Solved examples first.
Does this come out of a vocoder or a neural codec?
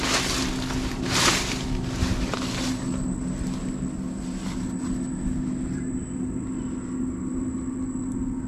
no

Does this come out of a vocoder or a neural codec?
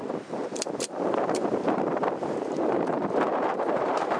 yes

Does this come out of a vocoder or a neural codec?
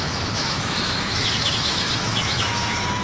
yes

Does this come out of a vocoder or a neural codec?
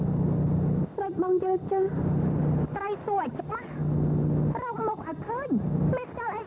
no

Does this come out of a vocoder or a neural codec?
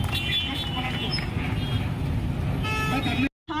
no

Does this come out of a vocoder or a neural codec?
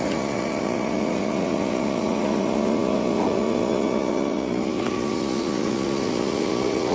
yes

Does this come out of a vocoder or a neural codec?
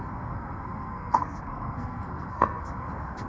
yes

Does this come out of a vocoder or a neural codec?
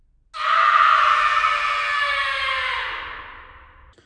no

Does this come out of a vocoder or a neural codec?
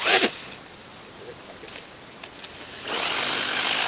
no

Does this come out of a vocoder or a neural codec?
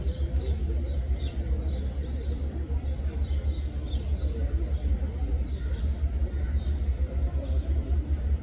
no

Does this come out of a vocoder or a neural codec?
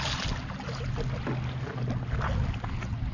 no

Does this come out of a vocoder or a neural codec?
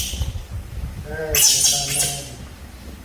no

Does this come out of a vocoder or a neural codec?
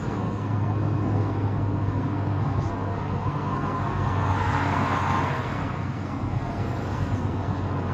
yes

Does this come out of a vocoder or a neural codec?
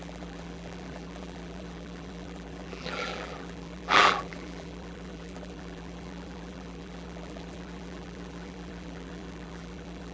yes